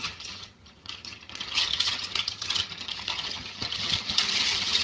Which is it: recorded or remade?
remade